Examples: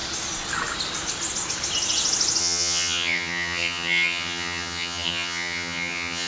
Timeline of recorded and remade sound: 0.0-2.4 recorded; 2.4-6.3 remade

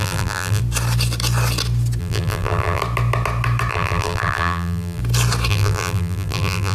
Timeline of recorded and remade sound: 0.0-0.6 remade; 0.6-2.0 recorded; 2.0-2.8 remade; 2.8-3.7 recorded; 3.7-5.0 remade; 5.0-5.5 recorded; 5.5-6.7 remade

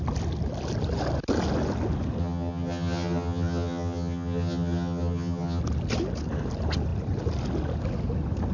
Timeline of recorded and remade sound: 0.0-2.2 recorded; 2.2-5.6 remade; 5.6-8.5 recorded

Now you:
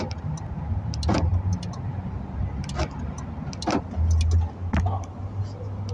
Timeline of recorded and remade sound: 0.0-5.9 recorded